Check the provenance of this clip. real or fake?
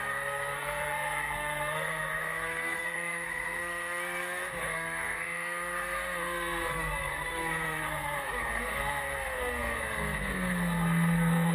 fake